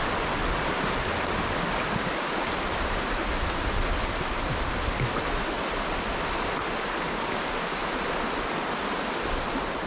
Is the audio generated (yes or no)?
no